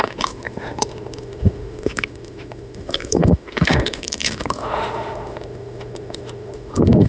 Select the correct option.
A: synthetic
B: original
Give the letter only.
A